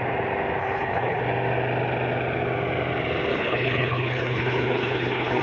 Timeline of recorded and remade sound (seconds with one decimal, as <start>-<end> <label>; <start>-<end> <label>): 0.0-0.6 recorded; 0.6-1.2 remade; 1.2-3.3 recorded; 3.3-5.4 remade